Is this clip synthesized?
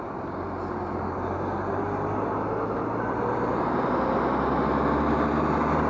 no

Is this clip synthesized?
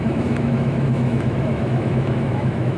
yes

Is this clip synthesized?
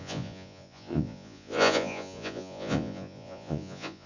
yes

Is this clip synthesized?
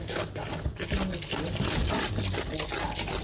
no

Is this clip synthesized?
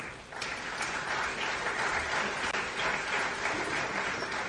no